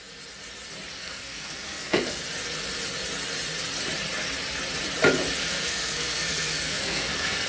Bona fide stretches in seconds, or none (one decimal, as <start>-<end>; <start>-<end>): 0.0-1.0; 2.2-5.4